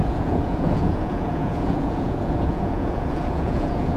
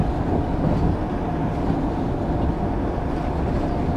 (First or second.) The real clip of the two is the second